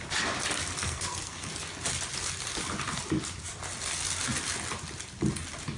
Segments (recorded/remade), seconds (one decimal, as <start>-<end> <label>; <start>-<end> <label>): 0.0-0.8 recorded; 0.8-1.5 remade; 1.5-5.8 recorded